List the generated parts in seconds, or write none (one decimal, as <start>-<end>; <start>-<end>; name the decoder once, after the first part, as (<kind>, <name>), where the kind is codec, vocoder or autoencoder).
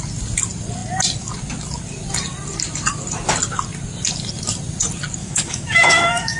5.2-6.4 (autoencoder, DAC-VAE)